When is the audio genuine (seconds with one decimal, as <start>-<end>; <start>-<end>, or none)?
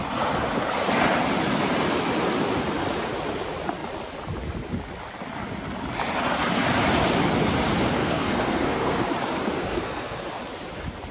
0.0-8.0; 9.0-9.6; 10.2-11.1